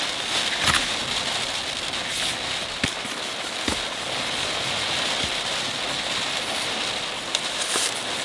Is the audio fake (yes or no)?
no